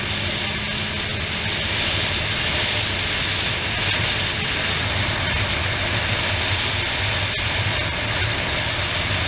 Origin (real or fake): real